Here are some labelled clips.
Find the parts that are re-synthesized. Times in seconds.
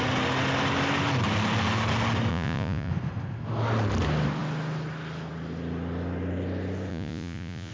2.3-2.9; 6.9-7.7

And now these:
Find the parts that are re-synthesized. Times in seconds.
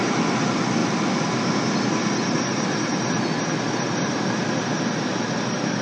none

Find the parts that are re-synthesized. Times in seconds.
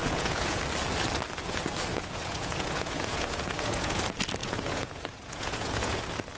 0.0-0.6; 1.9-4.0; 4.4-6.0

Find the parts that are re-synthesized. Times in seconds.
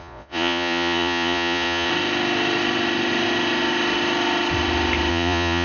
0.0-1.9; 5.1-5.6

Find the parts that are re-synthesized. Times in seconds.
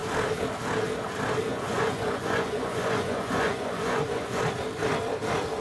1.5-4.4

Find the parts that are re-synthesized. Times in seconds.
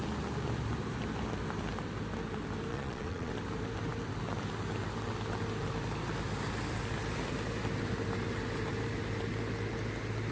2.7-3.3